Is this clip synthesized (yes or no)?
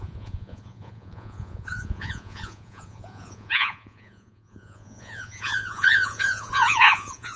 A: yes